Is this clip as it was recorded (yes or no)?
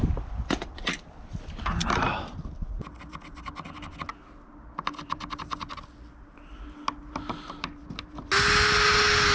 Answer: yes